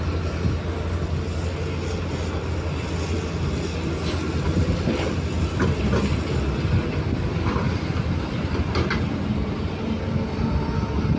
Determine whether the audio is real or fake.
real